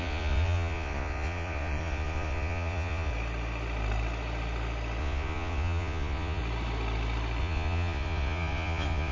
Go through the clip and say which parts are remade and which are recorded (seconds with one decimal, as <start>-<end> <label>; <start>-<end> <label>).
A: 0.0-3.1 remade; 3.1-5.0 recorded; 5.0-6.4 remade; 6.4-7.4 recorded; 7.4-9.1 remade